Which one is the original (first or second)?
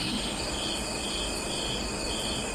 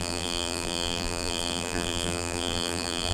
first